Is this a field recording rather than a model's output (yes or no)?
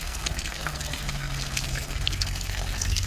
no